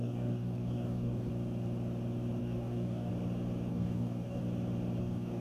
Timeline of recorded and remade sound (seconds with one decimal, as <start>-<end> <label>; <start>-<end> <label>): 0.0-1.3 remade; 1.3-2.4 recorded; 2.4-3.1 remade; 3.1-3.7 recorded; 3.7-4.4 remade; 4.4-5.0 recorded; 5.0-5.4 remade